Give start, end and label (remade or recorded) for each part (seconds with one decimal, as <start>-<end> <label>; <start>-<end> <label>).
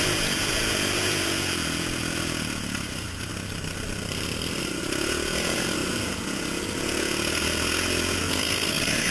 0.0-3.3 remade; 3.3-4.8 recorded; 4.8-9.1 remade